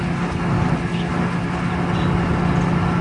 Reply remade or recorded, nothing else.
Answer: recorded